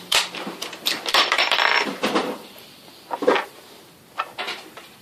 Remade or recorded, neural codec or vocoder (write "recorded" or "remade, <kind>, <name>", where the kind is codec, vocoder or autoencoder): remade, vocoder, BigVGAN v2